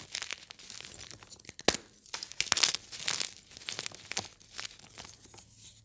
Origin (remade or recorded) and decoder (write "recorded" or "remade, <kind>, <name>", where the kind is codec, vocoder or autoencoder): recorded